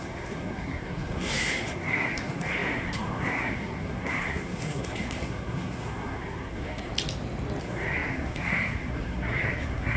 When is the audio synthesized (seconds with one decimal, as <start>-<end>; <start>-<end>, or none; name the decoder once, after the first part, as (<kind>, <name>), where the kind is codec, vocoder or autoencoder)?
0.0-6.9 (codec, SNAC); 7.6-10.0